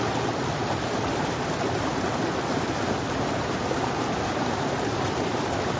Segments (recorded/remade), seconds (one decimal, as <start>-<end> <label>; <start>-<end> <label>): 0.0-5.8 recorded